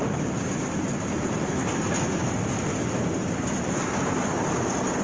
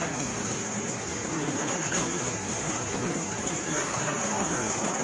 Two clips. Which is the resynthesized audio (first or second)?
second